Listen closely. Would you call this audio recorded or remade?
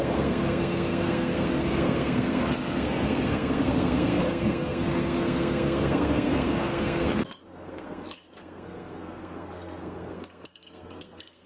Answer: remade